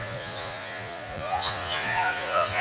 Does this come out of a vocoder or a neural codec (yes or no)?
yes